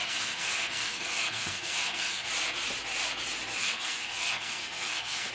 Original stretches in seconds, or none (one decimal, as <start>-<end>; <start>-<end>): 2.3-3.6